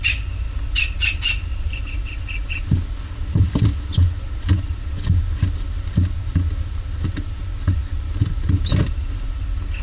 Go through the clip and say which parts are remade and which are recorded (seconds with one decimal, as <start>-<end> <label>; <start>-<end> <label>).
0.0-9.8 recorded